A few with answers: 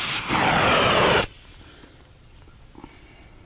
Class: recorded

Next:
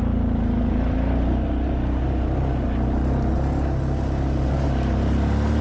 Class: recorded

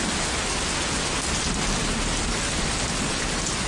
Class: recorded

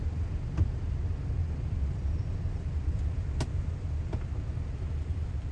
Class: recorded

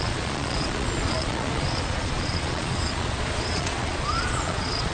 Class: remade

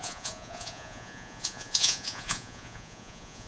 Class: remade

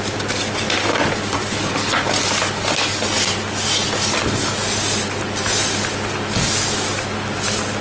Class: recorded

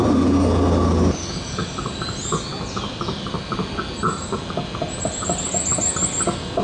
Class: recorded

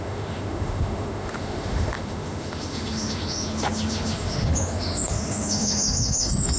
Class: remade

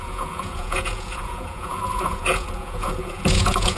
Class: remade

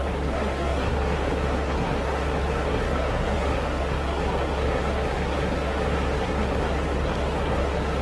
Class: remade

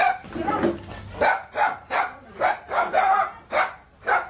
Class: recorded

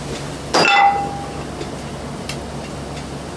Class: recorded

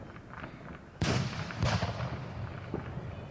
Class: recorded